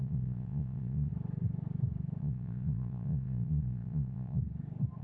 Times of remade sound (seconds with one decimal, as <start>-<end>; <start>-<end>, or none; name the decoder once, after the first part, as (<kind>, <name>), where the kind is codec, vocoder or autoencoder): 0.0-1.1 (vocoder, Vocos); 2.2-4.4